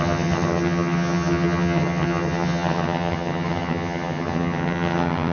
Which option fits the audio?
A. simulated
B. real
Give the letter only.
A